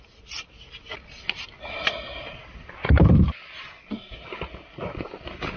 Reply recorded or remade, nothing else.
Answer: recorded